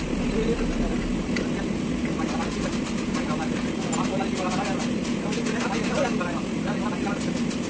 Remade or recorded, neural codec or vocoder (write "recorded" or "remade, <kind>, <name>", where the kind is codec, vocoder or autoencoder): recorded